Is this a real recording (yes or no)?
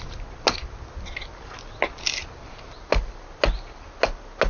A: yes